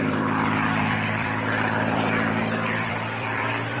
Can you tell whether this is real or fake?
fake